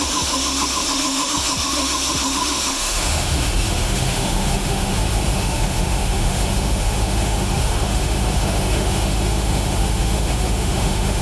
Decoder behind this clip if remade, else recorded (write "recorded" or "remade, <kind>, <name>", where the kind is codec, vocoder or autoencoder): remade, autoencoder, DAC-VAE